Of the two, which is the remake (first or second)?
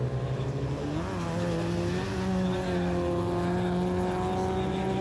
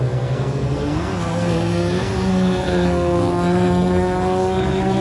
second